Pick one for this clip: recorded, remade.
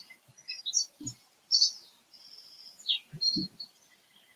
remade